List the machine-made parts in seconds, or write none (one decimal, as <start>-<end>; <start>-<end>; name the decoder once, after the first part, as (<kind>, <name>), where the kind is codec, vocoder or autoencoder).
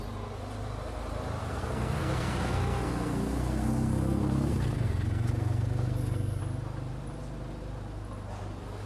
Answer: 1.4-6.4 (codec, SNAC)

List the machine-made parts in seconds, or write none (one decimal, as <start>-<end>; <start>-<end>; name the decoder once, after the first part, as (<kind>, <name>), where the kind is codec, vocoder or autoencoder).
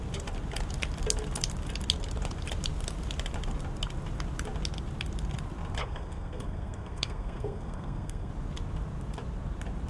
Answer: 5.8-8.3 (codec, SNAC)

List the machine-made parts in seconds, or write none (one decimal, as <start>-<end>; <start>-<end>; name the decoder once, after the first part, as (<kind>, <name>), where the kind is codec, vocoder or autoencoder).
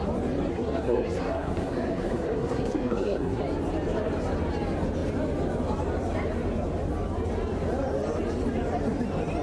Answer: 0.5-3.4 (codec, SNAC)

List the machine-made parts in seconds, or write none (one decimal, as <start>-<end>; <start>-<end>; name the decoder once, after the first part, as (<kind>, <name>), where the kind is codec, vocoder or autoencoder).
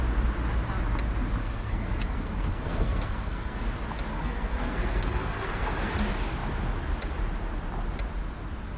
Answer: 1.4-3.6 (codec, SNAC); 4.1-5.9